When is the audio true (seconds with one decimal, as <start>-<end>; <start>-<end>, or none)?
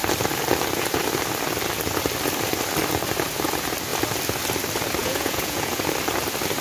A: 0.0-5.0; 5.8-6.6